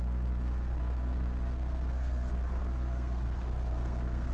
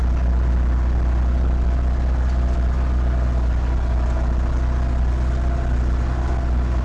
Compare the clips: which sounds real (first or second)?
second